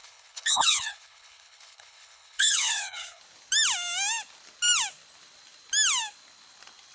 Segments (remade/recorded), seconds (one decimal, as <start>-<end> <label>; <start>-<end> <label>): 0.0-3.2 remade; 3.2-6.9 recorded